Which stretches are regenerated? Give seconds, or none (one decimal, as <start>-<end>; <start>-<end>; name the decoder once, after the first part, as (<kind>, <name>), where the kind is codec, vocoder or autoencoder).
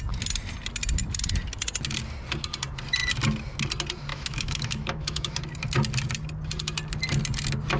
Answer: 4.1-5.4 (autoencoder, DAC-VAE)